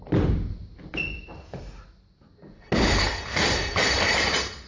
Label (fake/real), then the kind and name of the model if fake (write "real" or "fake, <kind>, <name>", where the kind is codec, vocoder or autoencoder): real